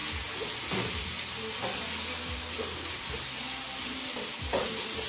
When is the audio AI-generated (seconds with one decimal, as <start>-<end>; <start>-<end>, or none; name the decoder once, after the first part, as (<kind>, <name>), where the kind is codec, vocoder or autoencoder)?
none